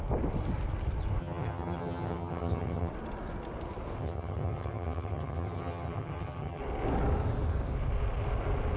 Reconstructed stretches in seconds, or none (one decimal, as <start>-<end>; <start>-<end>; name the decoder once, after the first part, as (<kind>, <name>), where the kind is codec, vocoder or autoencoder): 1.2-2.9 (vocoder, HiFi-GAN); 4.0-6.6